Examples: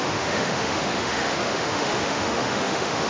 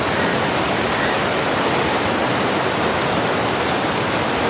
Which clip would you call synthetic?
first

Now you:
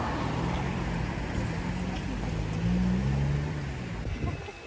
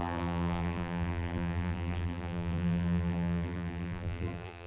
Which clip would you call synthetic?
second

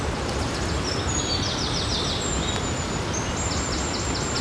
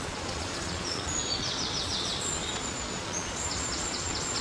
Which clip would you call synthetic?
second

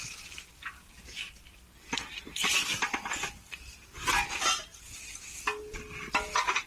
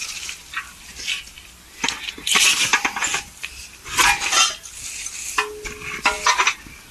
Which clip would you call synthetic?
first